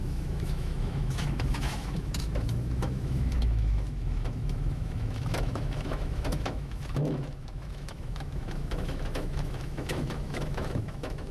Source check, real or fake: fake